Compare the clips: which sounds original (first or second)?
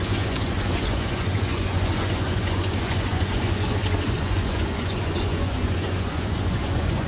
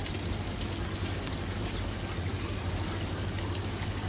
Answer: second